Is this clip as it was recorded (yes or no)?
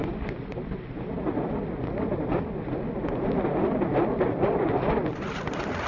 yes